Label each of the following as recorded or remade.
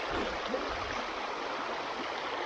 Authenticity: recorded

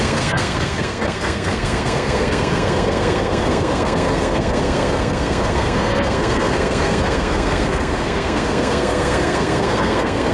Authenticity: remade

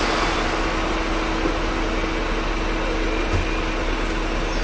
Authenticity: recorded